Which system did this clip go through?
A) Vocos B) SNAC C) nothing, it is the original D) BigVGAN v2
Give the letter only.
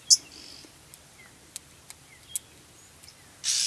C